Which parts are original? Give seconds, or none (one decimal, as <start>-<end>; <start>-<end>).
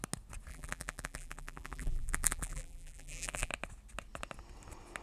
0.0-0.5; 3.5-5.0